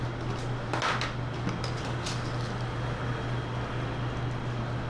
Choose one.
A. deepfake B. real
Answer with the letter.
B